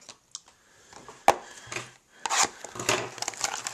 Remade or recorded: recorded